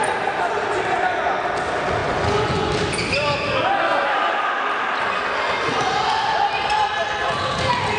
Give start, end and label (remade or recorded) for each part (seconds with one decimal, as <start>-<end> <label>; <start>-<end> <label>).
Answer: 0.0-2.0 recorded; 2.0-2.7 remade; 2.7-8.0 recorded